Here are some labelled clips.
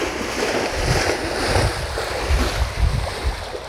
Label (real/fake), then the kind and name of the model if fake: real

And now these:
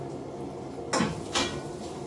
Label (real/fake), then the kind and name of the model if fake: real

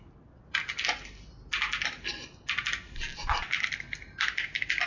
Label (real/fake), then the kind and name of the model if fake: real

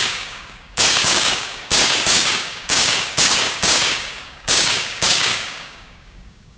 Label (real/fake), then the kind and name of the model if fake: fake, codec, DAC